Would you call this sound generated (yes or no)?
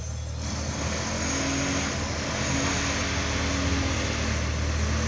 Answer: no